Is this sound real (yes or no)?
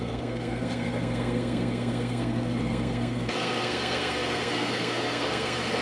no